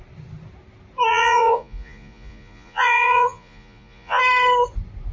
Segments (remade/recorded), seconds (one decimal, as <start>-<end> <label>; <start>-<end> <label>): 0.0-1.1 recorded; 1.1-4.2 remade; 4.2-5.1 recorded